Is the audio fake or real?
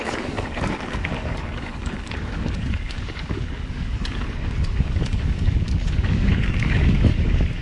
fake